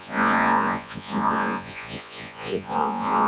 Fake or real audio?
fake